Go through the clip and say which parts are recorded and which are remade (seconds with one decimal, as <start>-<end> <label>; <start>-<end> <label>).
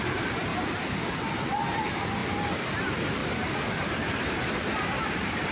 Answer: 0.0-0.5 remade; 0.5-1.5 recorded; 1.5-5.5 remade